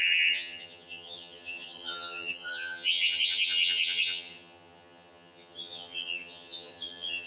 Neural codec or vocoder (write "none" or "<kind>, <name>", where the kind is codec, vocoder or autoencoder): vocoder, HiFi-GAN